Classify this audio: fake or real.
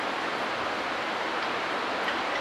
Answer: real